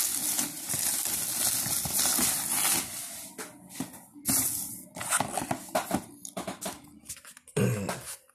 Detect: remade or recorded recorded